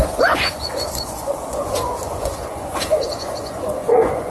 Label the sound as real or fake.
fake